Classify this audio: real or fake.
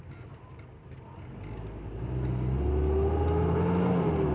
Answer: real